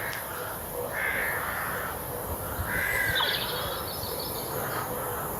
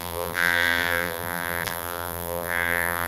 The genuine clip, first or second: first